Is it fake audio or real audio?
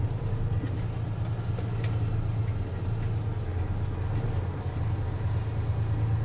real